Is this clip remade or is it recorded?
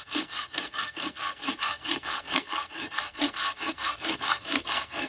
remade